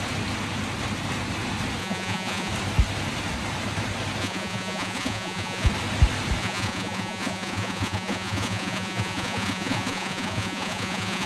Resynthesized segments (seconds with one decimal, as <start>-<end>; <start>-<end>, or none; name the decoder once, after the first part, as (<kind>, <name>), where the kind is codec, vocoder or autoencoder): 1.8-2.5 (vocoder, Vocos); 4.2-5.7; 6.4-11.3